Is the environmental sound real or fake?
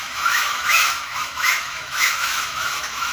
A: fake